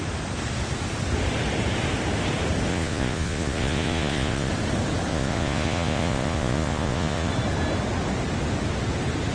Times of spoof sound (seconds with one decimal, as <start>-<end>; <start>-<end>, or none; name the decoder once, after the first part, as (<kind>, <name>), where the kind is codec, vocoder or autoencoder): 2.7-4.5 (vocoder, Vocos); 5.1-7.3